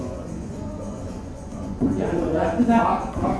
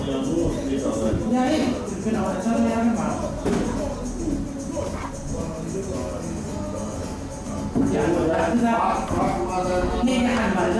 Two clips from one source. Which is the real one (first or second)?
second